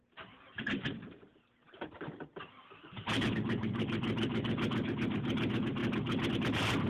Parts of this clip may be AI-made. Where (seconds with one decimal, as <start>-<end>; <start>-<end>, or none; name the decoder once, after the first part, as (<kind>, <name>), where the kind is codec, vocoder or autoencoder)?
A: none